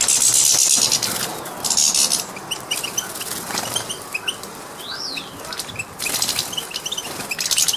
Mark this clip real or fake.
real